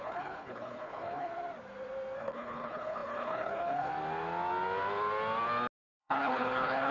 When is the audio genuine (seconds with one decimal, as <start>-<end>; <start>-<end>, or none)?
1.3-2.2; 3.9-6.0